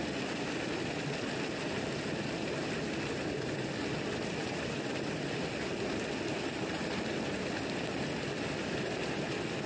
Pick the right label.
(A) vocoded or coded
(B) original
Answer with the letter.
B